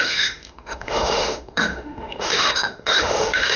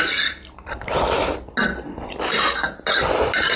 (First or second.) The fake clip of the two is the first